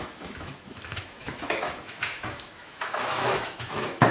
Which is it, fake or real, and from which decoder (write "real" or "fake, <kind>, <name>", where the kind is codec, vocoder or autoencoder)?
fake, autoencoder, DAC-VAE